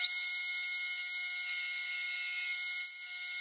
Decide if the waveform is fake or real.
real